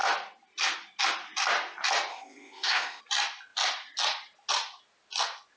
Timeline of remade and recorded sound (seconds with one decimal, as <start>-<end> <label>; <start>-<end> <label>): 0.0-2.1 recorded; 2.1-3.0 remade; 3.0-5.6 recorded